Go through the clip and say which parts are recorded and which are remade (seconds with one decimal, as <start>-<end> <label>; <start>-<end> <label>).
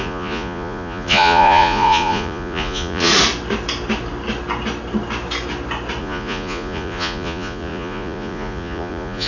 0.0-3.1 remade; 3.1-6.0 recorded; 6.0-9.3 remade